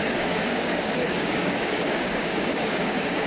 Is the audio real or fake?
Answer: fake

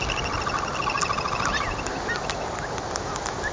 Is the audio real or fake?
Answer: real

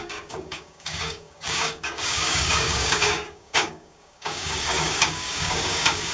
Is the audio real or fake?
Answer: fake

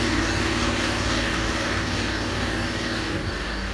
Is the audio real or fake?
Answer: fake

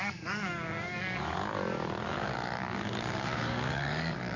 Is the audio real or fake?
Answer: fake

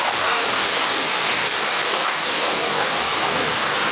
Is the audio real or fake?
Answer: fake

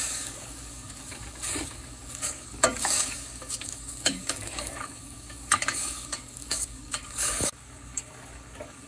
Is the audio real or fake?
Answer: fake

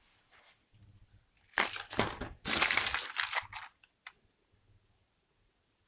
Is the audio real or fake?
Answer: real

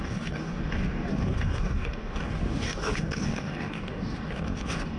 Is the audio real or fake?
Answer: fake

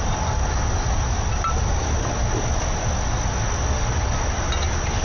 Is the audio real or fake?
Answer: real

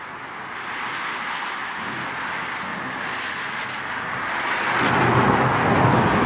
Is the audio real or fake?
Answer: real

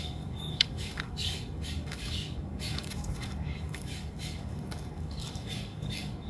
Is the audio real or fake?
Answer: fake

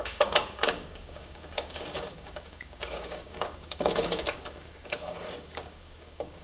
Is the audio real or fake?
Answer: fake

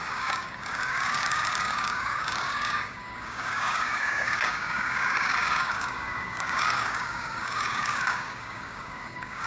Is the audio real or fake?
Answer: fake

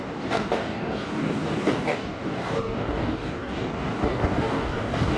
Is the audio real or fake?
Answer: fake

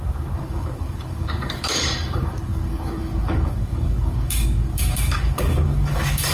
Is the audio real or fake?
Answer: fake